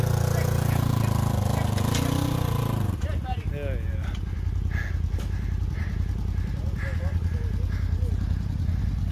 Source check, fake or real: real